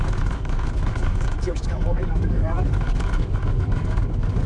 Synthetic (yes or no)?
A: yes